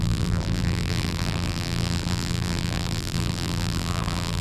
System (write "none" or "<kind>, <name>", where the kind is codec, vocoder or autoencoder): vocoder, BigVGAN v2